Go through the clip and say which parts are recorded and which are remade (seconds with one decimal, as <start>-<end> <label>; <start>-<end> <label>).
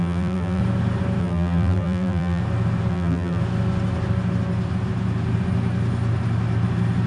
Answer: 0.0-0.6 remade; 0.6-1.2 recorded; 1.2-2.4 remade; 2.4-2.9 recorded; 2.9-3.4 remade; 3.4-7.1 recorded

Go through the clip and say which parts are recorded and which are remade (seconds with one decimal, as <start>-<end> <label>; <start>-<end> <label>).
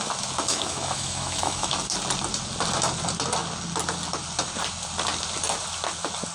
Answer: 0.0-0.5 recorded; 0.5-1.7 remade; 1.7-6.3 recorded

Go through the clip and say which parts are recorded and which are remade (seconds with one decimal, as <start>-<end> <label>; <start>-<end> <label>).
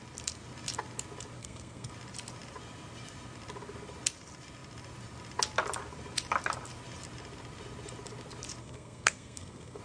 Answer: 0.0-1.4 recorded; 1.4-1.9 remade; 1.9-8.6 recorded; 8.6-9.8 remade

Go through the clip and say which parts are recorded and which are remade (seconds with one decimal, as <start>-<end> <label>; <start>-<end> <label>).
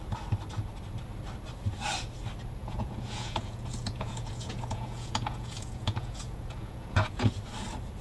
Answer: 0.0-2.6 recorded; 2.6-7.3 remade; 7.3-8.0 recorded